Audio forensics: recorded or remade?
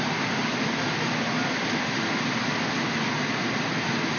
recorded